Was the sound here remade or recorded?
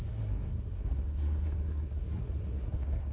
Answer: remade